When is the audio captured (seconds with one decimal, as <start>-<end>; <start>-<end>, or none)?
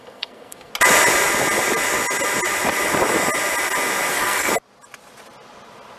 0.7-4.1; 4.5-6.0